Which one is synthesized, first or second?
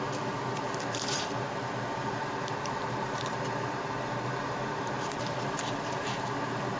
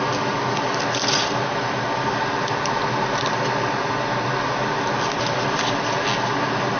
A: first